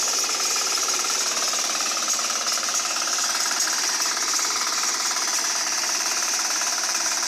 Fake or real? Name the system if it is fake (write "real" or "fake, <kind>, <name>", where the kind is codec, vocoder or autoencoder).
fake, vocoder, BigVGAN v2